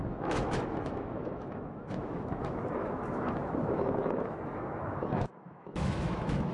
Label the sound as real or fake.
fake